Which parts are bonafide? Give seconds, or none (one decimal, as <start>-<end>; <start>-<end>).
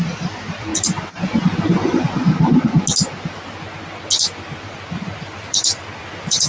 0.7-4.6